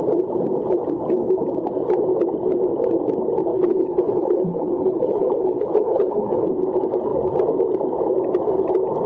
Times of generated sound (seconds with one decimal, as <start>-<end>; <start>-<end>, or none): 3.5-6.5

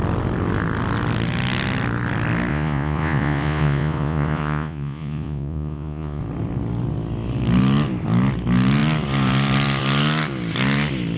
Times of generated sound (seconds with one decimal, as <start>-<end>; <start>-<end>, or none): 2.5-6.2

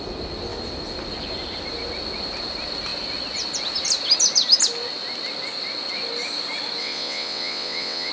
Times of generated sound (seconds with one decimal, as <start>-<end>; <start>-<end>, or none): 6.8-8.1